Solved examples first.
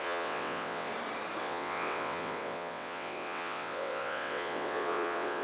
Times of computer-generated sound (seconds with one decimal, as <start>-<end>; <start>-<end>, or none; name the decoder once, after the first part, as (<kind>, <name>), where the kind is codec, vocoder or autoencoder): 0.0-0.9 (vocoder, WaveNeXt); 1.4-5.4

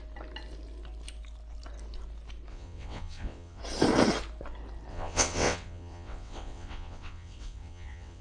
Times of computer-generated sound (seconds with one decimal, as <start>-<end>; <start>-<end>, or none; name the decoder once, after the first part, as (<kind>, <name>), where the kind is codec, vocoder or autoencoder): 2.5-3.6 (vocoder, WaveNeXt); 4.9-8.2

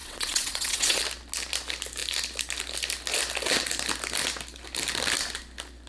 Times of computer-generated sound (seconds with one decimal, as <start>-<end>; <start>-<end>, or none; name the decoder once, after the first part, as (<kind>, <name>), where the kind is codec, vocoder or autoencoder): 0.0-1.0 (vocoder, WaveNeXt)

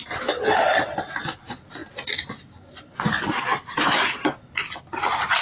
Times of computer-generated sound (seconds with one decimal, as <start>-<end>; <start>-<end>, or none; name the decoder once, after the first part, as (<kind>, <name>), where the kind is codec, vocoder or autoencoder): none

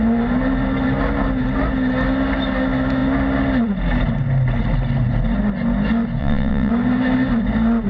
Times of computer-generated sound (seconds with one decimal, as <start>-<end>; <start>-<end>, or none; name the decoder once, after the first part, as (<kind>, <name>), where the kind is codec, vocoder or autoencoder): 6.2-6.7 (vocoder, WaveNeXt)